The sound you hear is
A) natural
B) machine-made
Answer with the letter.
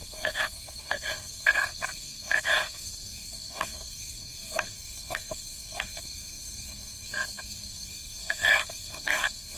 B